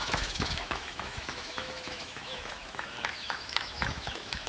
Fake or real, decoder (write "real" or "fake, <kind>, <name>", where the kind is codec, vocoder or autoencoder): fake, autoencoder, DAC-VAE